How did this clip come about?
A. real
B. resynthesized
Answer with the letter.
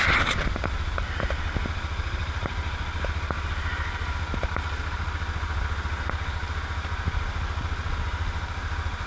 A